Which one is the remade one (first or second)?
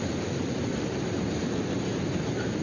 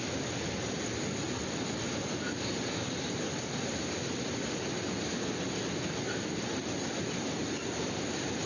first